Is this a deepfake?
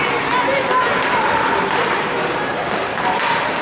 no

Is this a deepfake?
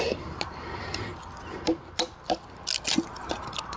no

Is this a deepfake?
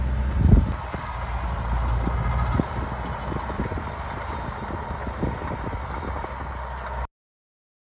no